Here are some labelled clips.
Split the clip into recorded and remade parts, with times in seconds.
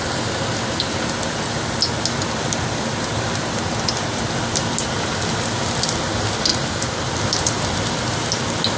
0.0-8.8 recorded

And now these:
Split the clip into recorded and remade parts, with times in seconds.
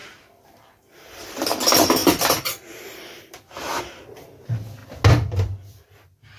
0.0-1.6 remade; 1.6-2.0 recorded; 2.0-3.8 remade; 3.8-6.4 recorded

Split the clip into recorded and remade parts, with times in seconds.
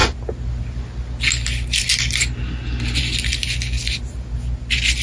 0.0-5.0 recorded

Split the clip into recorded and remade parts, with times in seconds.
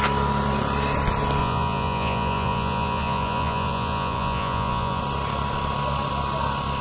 0.0-1.4 recorded; 1.4-5.0 remade; 5.0-6.8 recorded